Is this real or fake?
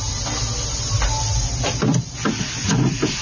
real